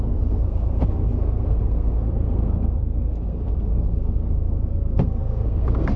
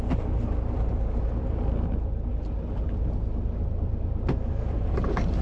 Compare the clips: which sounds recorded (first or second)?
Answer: second